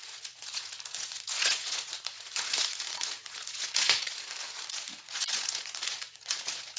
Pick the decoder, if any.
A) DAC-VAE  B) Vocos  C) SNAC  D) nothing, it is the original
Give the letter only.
B